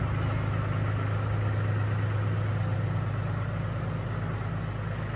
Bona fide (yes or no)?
yes